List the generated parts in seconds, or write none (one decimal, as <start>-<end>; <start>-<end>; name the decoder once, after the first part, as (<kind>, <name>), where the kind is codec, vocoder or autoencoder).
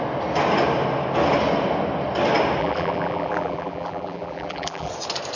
2.6-4.9 (vocoder, BigVGAN v2)